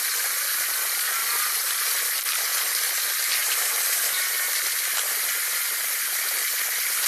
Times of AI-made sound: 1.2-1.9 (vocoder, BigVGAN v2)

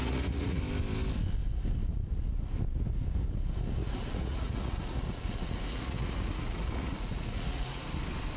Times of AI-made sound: 0.0-0.6 (vocoder, Vocos); 3.8-7.8